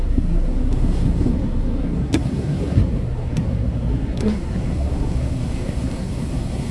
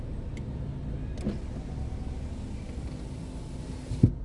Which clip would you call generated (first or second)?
first